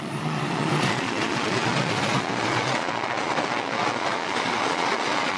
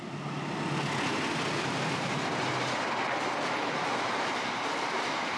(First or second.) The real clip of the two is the second